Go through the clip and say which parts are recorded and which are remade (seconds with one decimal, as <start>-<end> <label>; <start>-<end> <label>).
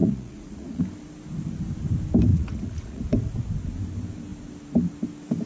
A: 0.0-0.8 remade; 0.8-2.3 recorded; 2.3-3.0 remade; 3.0-5.5 recorded